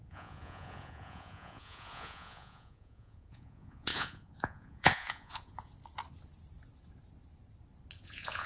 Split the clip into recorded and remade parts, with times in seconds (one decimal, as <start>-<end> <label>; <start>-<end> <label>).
0.0-5.7 remade; 5.7-8.0 recorded; 8.0-8.5 remade